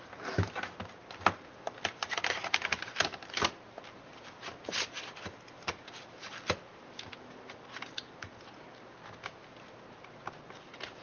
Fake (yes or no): no